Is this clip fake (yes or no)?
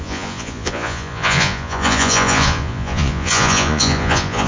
yes